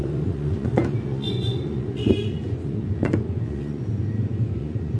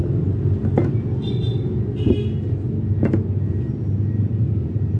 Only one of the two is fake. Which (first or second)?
first